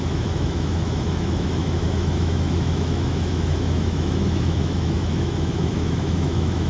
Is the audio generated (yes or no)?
yes